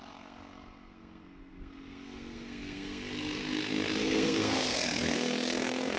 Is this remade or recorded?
remade